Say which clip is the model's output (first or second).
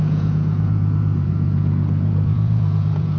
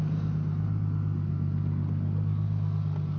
first